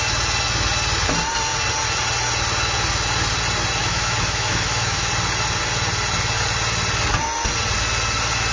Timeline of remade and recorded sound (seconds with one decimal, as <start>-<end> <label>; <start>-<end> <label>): 0.0-3.8 recorded; 3.8-5.1 remade; 5.1-8.5 recorded